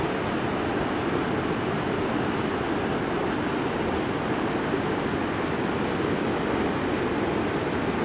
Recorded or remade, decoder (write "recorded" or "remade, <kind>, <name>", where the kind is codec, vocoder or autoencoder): recorded